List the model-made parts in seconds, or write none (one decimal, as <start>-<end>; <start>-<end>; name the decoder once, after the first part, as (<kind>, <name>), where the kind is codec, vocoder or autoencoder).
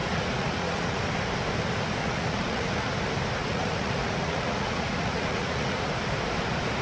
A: 0.0-1.0 (vocoder, Vocos); 2.0-2.9; 3.4-5.9